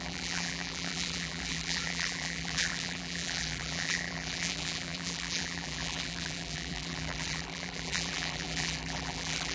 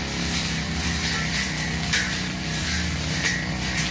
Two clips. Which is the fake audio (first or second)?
first